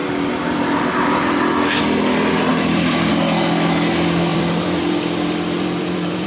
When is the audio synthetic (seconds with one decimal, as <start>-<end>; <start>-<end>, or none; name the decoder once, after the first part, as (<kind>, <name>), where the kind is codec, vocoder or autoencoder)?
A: 2.5-3.1 (vocoder, BigVGAN v2); 4.3-6.3